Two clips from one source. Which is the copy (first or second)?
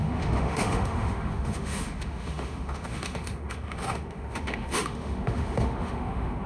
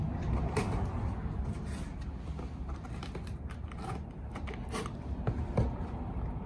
first